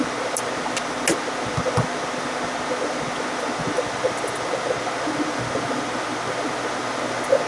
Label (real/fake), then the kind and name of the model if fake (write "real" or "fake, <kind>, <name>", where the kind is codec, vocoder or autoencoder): real